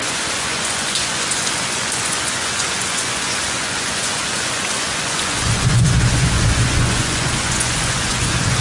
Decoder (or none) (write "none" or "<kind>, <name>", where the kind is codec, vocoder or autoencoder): vocoder, Vocos